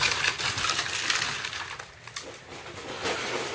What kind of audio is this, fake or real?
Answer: real